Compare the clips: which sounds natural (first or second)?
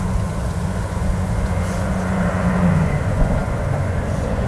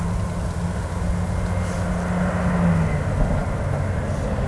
second